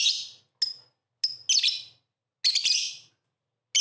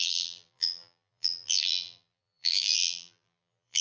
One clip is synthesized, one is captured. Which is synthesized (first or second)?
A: second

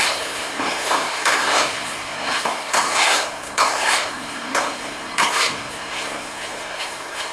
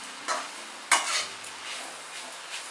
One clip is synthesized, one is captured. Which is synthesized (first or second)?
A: first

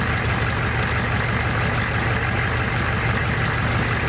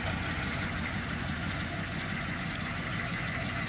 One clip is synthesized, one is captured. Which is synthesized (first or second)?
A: second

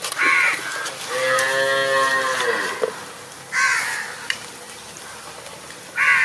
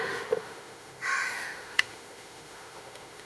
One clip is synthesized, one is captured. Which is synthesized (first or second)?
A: second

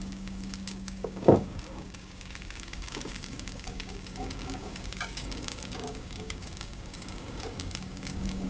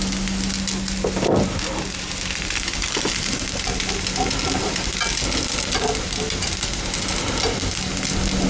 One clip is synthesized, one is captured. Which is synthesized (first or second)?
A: first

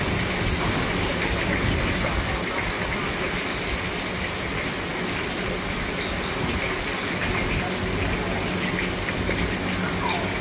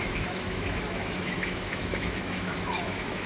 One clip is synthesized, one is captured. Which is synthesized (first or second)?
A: second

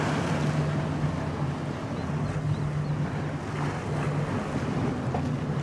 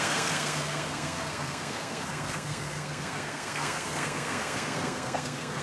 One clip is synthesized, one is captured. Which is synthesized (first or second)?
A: second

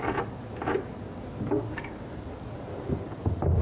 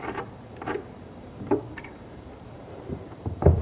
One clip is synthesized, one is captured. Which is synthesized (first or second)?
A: second